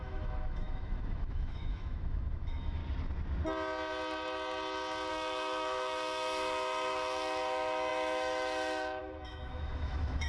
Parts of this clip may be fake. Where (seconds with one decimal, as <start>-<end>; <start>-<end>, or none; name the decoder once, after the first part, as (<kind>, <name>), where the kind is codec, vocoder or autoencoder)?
0.0-2.8 (autoencoder, DAC-VAE); 5.1-10.3